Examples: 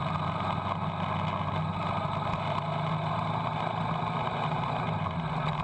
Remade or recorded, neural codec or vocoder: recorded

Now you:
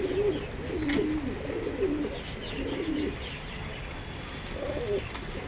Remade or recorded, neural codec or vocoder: recorded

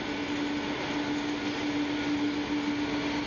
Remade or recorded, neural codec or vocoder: recorded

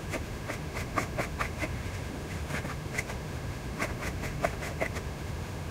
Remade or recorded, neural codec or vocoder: remade, autoencoder, DAC-VAE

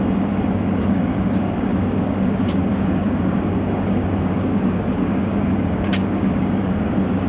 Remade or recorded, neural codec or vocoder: remade, codec, DAC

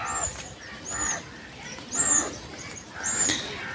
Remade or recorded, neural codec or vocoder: recorded